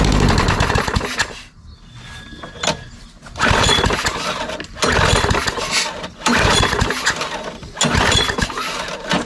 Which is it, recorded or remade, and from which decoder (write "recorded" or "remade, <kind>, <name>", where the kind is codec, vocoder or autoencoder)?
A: recorded